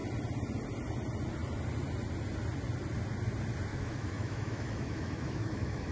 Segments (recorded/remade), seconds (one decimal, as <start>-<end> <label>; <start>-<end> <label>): 0.0-3.7 recorded; 3.7-5.9 remade